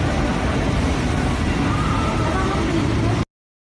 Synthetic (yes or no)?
no